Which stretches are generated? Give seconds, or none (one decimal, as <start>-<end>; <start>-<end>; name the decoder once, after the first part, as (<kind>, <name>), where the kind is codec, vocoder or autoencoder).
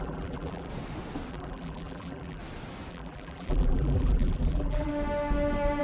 0.0-0.7 (vocoder, BigVGAN v2); 1.3-2.4; 2.9-4.9